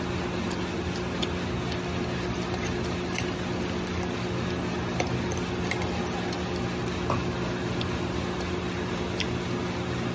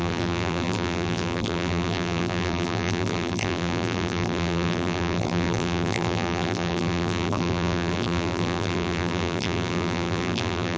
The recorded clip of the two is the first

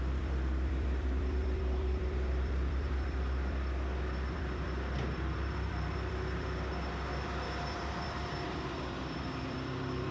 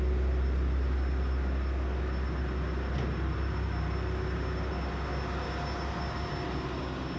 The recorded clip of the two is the second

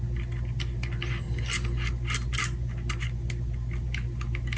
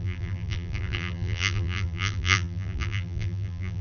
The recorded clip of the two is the first